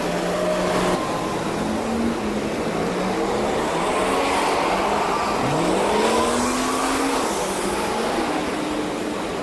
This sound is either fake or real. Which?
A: real